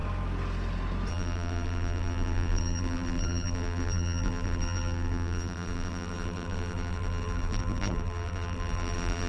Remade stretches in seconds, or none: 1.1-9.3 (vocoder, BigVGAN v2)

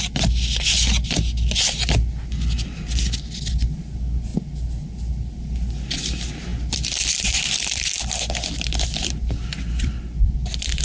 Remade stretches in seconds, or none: 6.5-10.0 (vocoder, BigVGAN v2)

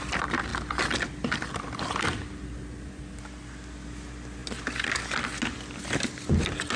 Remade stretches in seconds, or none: 0.5-3.0 (vocoder, BigVGAN v2)

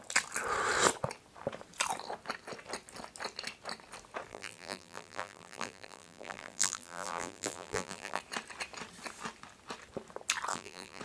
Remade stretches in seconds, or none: 4.3-8.2 (vocoder, BigVGAN v2); 10.5-11.0